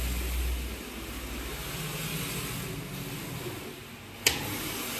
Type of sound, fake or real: real